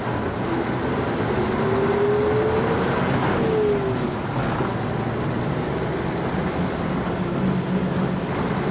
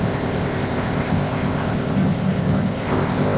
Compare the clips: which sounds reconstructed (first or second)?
second